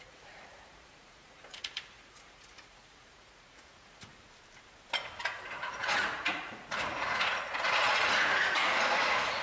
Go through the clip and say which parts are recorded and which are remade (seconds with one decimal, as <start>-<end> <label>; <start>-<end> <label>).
0.0-4.1 remade; 4.1-5.5 recorded; 5.5-9.4 remade